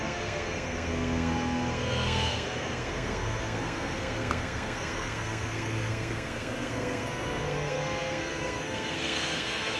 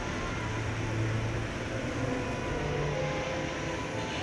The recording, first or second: second